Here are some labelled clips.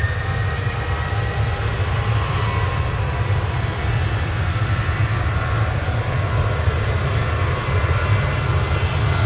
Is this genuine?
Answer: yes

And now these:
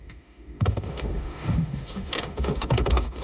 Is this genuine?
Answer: no